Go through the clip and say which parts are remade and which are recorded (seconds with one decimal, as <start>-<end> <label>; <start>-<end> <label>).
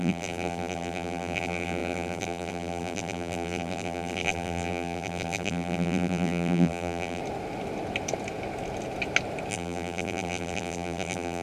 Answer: 0.0-7.2 remade; 7.2-9.5 recorded; 9.5-11.4 remade